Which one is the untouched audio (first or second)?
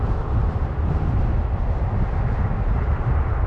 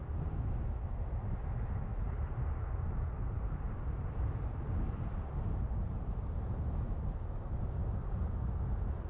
second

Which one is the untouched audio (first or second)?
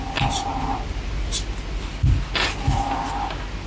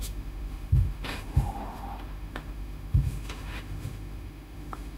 first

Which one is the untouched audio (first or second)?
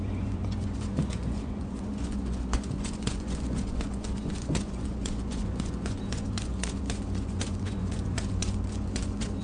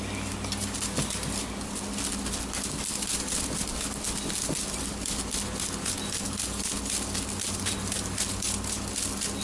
second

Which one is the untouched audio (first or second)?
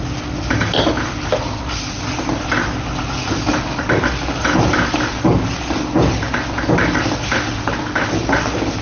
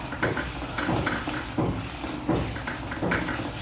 first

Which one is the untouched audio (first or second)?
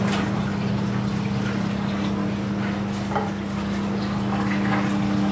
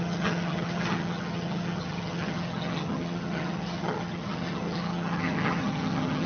first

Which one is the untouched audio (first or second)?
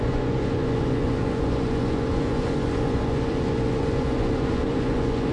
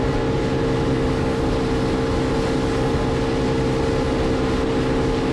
second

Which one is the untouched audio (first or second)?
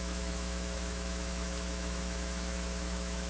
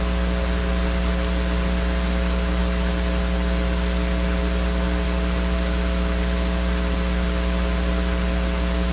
second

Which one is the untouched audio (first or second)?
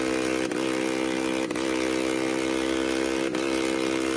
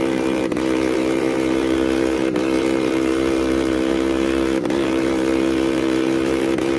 first